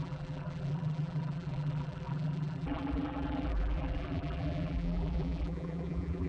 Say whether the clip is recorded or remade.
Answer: remade